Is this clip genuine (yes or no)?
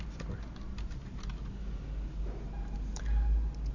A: yes